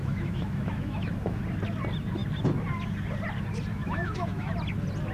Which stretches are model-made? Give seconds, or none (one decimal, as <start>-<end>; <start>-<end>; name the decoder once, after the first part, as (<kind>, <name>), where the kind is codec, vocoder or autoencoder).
0.0-1.4 (autoencoder, DAC-VAE); 3.7-4.5